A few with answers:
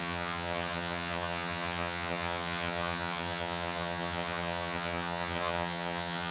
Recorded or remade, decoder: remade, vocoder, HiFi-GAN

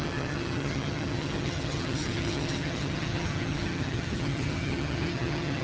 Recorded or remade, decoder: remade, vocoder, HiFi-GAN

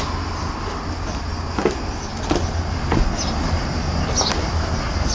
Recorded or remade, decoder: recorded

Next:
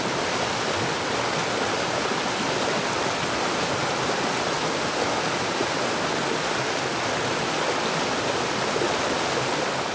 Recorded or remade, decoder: recorded